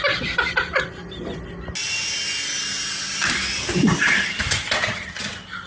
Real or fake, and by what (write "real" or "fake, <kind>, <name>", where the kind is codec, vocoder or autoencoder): real